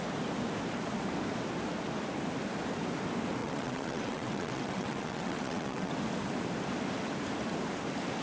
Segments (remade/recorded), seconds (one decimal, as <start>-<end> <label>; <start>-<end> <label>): 0.0-3.4 recorded; 3.4-5.9 remade; 5.9-8.2 recorded

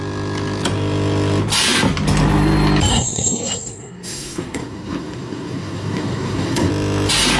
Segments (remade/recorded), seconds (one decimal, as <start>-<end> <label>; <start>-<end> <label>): 0.0-2.9 recorded; 2.9-6.7 remade; 6.7-7.4 recorded

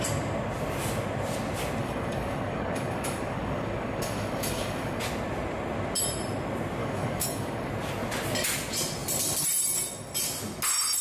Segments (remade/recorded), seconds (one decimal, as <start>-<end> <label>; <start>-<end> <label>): 0.0-1.8 recorded; 1.8-5.0 remade; 5.0-6.8 recorded; 6.8-7.7 remade; 7.7-11.0 recorded

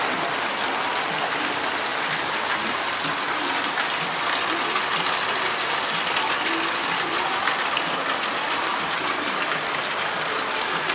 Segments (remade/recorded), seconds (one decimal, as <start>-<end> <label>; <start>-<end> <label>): 0.0-10.9 recorded

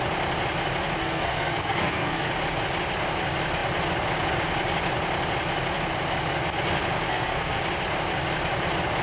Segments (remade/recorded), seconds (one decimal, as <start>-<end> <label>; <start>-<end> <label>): 0.0-1.0 recorded; 1.0-2.3 remade; 2.3-7.1 recorded; 7.1-7.6 remade; 7.6-9.0 recorded

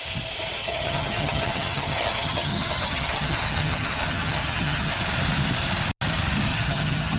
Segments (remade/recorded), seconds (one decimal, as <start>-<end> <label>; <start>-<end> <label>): 0.0-0.6 recorded; 0.6-4.9 remade; 4.9-6.5 recorded; 6.5-7.2 remade

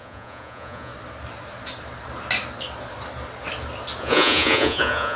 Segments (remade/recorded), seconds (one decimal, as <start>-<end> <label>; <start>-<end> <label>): 0.0-0.9 remade; 0.9-4.0 recorded; 4.0-5.2 remade